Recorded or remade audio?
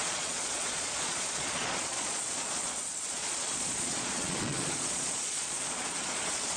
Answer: remade